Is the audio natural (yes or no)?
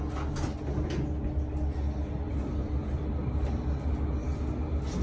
yes